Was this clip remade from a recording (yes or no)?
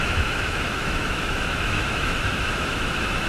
yes